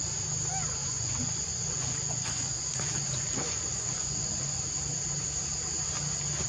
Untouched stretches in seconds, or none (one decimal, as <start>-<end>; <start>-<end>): 0.0-0.8; 4.7-6.5